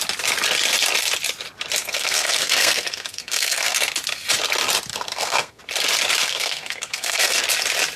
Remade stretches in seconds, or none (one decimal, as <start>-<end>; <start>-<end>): 1.8-3.9; 4.9-5.6; 6.2-7.4